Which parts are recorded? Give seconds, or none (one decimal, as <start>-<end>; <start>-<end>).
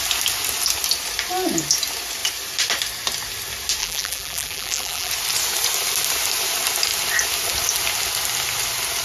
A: 0.0-3.8; 5.1-9.0